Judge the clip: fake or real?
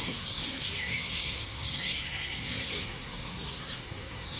fake